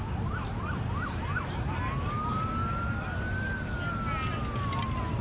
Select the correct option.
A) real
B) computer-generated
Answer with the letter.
A